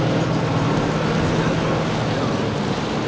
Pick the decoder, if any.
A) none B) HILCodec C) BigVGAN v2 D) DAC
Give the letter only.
A